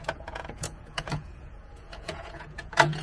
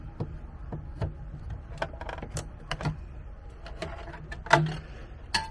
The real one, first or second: second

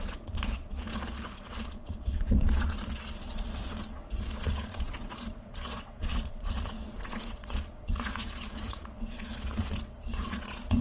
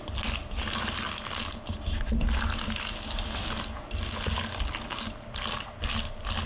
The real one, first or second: second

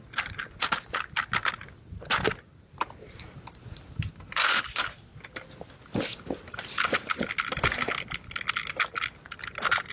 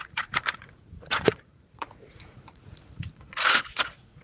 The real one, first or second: first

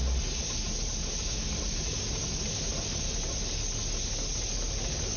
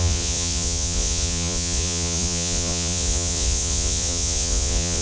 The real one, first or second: first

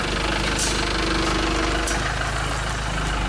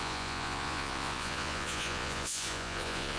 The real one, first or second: first